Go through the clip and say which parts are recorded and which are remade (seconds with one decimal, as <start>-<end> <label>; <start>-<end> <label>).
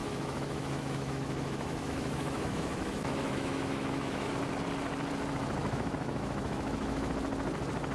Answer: 0.0-4.3 remade; 4.3-5.6 recorded; 5.6-7.1 remade; 7.1-7.9 recorded